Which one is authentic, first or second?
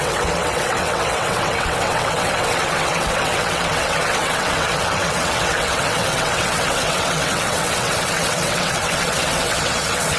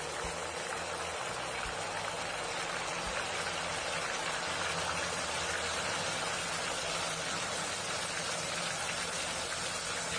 second